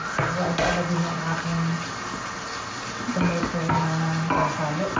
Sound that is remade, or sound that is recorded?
recorded